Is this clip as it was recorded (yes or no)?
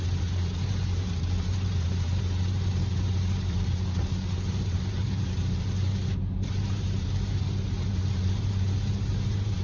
no